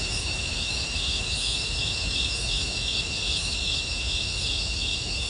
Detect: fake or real fake